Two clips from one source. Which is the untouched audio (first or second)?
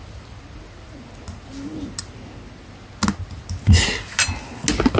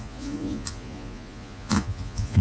first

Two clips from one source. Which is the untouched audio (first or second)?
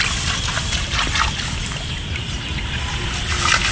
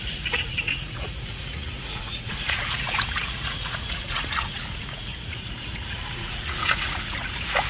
first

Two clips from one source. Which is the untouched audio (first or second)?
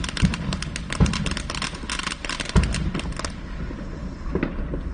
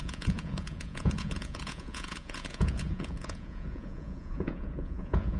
first